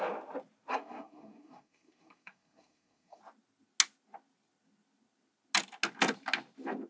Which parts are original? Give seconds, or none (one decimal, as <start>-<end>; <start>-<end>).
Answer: 0.0-0.7; 3.2-6.9

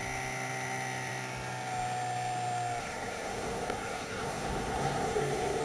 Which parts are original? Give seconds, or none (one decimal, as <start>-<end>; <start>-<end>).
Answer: 0.0-2.8

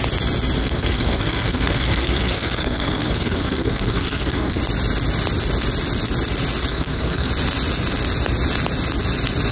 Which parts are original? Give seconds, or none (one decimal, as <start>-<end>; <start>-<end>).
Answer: 0.0-0.6; 4.6-6.7; 7.3-9.5

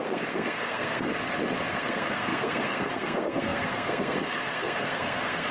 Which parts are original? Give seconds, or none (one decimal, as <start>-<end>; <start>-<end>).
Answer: 1.1-1.7

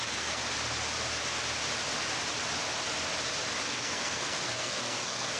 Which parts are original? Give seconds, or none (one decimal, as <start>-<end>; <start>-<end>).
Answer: 0.4-3.6